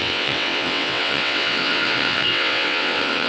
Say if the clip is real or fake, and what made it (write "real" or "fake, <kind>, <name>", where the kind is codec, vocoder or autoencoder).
fake, vocoder, WaveNeXt